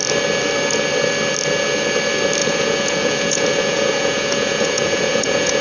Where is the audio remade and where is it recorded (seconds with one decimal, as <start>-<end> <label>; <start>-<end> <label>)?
0.0-2.4 recorded; 2.4-5.6 remade